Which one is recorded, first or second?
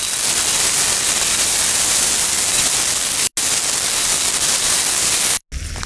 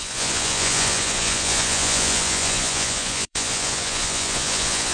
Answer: first